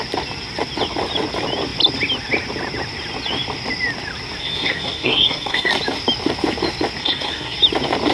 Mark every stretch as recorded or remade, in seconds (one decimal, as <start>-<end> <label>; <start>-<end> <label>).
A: 0.0-4.4 recorded; 4.4-5.7 remade; 5.7-7.0 recorded; 7.0-7.6 remade; 7.6-8.1 recorded